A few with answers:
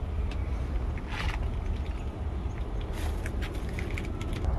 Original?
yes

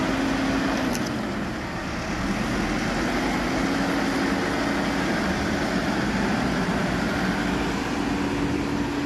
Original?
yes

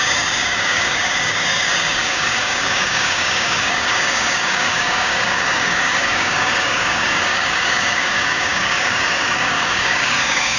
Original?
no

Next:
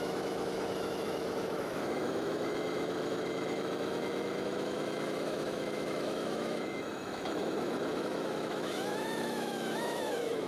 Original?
no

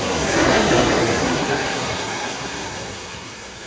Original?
no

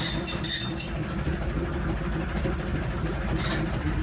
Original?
yes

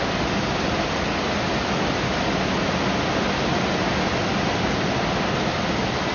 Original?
yes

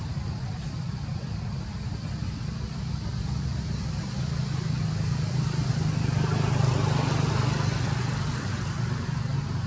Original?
yes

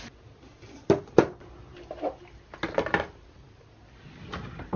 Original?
yes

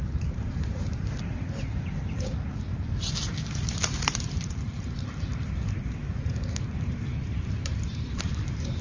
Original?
no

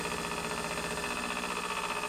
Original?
yes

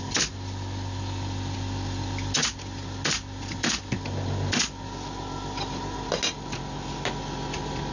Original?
yes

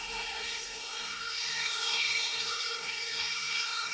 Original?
no